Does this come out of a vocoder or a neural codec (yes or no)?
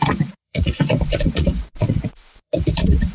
yes